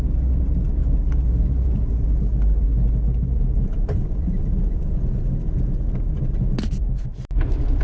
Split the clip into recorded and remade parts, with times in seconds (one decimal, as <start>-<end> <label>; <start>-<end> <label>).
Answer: 0.0-7.8 recorded